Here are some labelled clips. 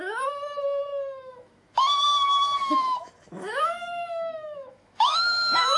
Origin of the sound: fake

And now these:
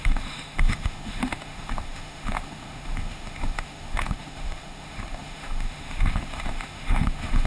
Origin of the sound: fake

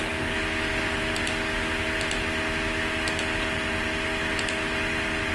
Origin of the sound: real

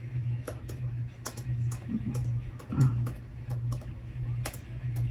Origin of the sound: fake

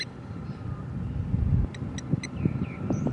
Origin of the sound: real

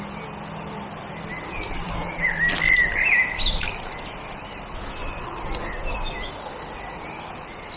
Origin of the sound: real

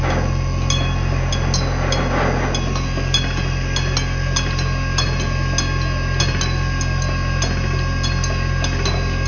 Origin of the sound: real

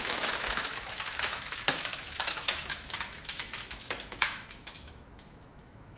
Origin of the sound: fake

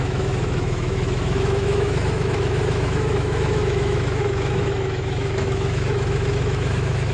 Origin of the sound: fake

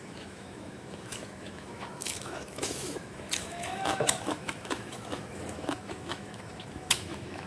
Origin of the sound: fake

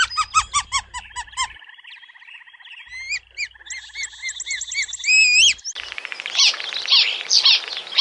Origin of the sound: real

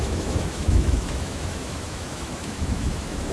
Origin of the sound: fake